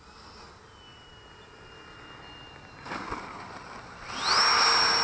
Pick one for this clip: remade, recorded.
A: recorded